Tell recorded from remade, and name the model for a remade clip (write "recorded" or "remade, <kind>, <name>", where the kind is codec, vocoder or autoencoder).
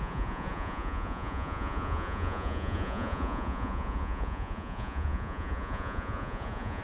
remade, vocoder, Vocos